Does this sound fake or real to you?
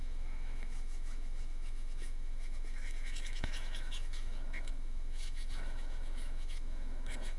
fake